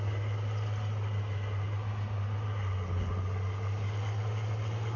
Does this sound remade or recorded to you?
recorded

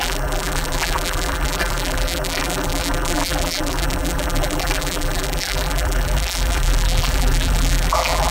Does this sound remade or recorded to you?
remade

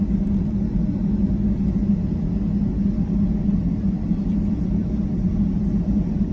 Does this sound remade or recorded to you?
recorded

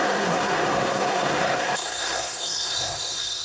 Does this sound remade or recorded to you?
remade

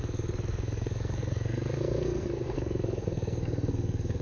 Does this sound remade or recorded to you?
remade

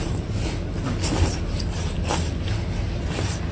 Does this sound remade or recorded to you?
remade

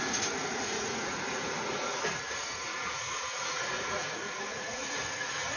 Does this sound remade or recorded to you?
remade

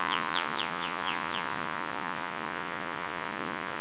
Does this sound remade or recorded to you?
remade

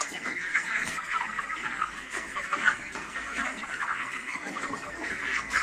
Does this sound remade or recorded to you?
remade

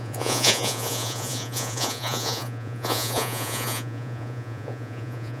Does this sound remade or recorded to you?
remade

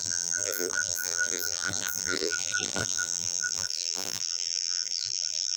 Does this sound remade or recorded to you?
remade